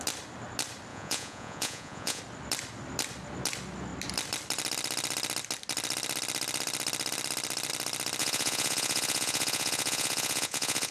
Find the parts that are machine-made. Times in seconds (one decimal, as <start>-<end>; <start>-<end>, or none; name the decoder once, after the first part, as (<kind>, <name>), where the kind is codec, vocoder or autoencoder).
0.9-2.2 (vocoder, Vocos); 8.2-10.9